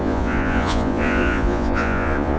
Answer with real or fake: fake